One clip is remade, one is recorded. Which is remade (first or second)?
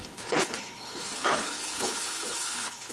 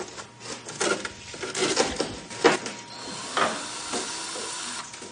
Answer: first